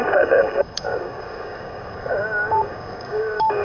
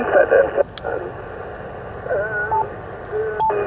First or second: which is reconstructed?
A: first